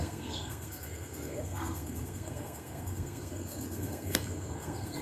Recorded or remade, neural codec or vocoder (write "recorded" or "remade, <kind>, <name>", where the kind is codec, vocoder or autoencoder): remade, codec, SNAC